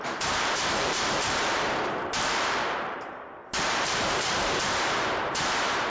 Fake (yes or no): yes